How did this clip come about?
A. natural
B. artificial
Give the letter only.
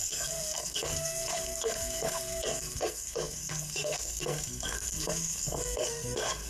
B